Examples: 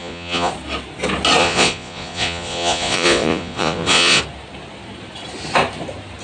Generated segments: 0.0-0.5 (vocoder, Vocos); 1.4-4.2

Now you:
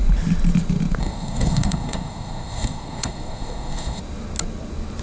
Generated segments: 1.0-4.0 (codec, SNAC)

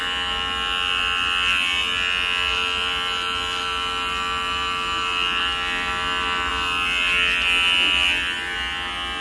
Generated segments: none

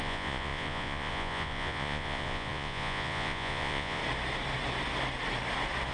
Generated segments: 0.0-4.0 (vocoder, Vocos)